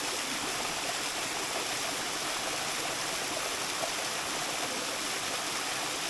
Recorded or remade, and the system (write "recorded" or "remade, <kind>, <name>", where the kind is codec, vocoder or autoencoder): recorded